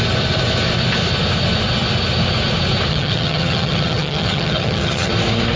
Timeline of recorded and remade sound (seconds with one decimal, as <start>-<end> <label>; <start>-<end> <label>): 0.0-2.9 recorded; 2.9-5.1 remade; 5.1-5.6 recorded